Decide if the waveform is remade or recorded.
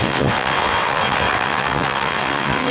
remade